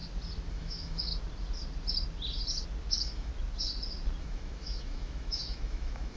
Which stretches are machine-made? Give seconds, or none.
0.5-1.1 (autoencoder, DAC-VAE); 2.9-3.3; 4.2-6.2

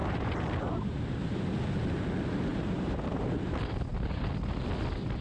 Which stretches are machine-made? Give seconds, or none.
0.0-1.4 (vocoder, BigVGAN v2); 2.5-3.2; 3.9-4.6

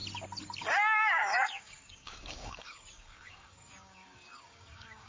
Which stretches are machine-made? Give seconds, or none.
0.6-5.1 (codec, DAC)

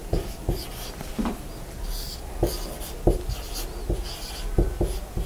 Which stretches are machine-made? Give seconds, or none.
none

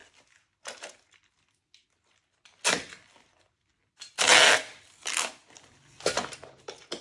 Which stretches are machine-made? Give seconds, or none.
2.7-3.7 (vocoder, BigVGAN v2); 4.7-7.0

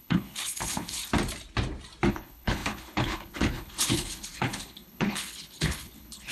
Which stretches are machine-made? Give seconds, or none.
0.0-1.0 (codec, HILCodec); 2.1-6.3

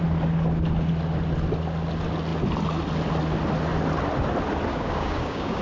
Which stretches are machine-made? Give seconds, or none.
4.7-5.6 (codec, DAC)